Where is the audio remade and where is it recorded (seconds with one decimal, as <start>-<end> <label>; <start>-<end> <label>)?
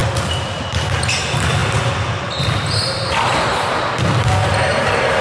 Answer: 0.0-0.6 remade; 0.6-1.6 recorded; 1.6-3.5 remade; 3.5-4.4 recorded; 4.4-5.2 remade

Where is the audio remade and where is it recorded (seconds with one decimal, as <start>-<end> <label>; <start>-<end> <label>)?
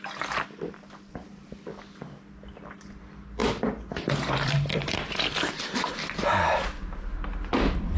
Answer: 0.0-3.4 recorded; 3.4-4.9 remade; 4.9-8.0 recorded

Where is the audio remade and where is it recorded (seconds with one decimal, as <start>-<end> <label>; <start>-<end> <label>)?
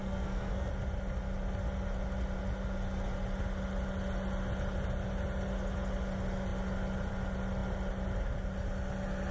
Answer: 0.0-0.7 remade; 0.7-9.3 recorded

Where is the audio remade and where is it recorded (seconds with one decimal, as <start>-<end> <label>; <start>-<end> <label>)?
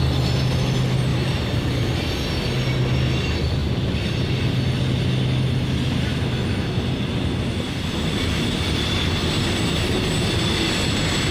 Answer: 0.0-1.1 recorded; 1.1-1.9 remade; 1.9-3.6 recorded; 3.6-4.1 remade; 4.1-11.3 recorded